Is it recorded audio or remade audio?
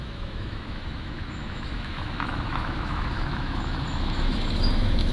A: remade